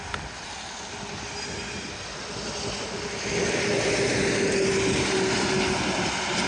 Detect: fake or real real